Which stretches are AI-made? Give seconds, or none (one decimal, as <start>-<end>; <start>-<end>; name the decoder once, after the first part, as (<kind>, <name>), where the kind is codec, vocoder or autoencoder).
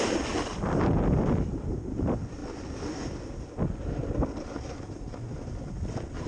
none